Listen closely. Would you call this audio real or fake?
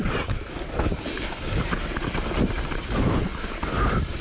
real